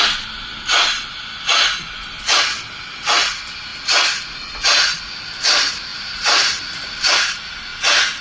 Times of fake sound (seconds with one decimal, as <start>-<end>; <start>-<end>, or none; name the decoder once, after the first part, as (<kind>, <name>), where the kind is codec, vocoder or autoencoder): 5.9-7.1 (vocoder, BigVGAN v2)